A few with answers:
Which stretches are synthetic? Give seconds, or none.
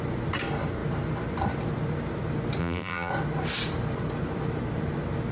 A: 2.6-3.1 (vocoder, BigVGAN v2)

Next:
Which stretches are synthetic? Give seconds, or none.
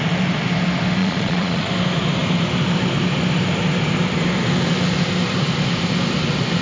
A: 1.0-1.7 (vocoder, Vocos)